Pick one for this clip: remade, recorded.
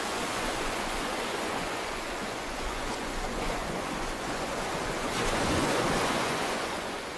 remade